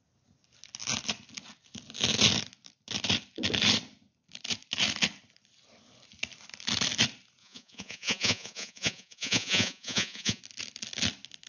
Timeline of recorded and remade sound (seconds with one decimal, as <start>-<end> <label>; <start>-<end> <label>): 0.0-7.4 recorded; 7.4-10.4 remade; 10.4-11.5 recorded